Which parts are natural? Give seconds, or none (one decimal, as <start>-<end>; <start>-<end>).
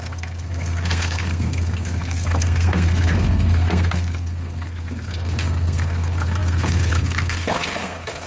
none